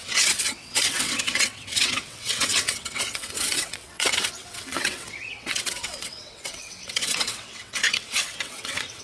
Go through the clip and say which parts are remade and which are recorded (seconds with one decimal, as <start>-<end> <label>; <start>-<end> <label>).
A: 0.0-9.0 remade